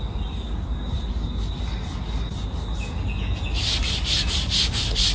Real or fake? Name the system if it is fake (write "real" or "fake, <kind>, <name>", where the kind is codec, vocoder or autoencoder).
real